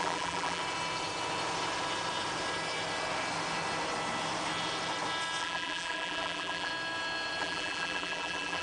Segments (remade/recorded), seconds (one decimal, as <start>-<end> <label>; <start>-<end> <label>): 0.0-0.6 remade; 0.6-5.4 recorded; 5.4-6.7 remade; 6.7-7.4 recorded; 7.4-8.6 remade

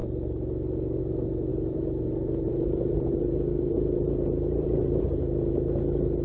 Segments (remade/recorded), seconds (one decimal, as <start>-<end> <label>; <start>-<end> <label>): 0.0-1.5 recorded; 1.5-5.2 remade; 5.2-6.2 recorded

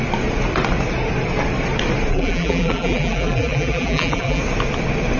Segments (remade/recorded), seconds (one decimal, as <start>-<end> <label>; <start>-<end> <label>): 0.0-2.1 recorded; 2.1-4.4 remade; 4.4-5.2 recorded

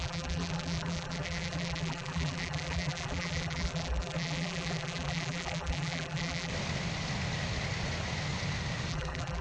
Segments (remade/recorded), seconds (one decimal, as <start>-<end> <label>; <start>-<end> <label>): 0.0-6.5 remade; 6.5-8.9 recorded; 8.9-9.4 remade

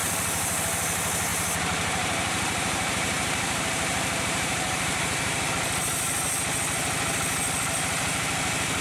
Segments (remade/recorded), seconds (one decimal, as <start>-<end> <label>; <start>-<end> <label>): 0.0-0.6 remade; 0.6-1.3 recorded; 1.3-5.5 remade; 5.5-8.8 recorded